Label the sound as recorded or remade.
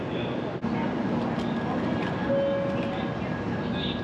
recorded